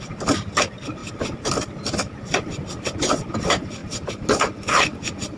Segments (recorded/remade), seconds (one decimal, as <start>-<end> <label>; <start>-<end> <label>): 0.0-5.4 recorded